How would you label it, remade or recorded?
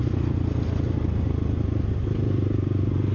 recorded